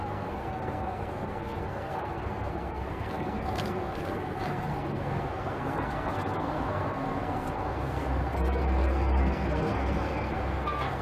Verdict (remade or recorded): remade